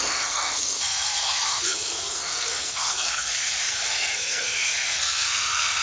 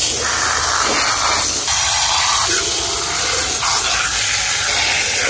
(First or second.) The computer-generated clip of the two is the first